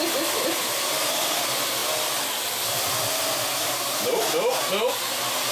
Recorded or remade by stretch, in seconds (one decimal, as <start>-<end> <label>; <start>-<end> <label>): 0.0-5.5 recorded